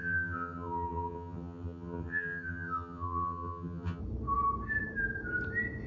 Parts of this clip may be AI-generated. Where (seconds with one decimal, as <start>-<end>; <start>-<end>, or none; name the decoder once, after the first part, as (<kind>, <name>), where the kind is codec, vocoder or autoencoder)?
0.0-4.0 (vocoder, HiFi-GAN)